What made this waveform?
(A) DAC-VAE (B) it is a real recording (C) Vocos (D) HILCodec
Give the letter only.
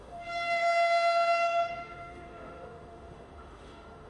A